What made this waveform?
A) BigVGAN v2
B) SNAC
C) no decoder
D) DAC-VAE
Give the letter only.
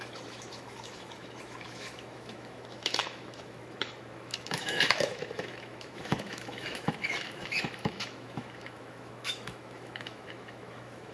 D